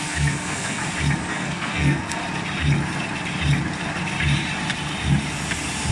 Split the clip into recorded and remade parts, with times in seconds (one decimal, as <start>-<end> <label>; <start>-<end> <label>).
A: 0.0-0.8 remade; 0.8-1.3 recorded; 1.3-2.2 remade; 2.2-5.9 recorded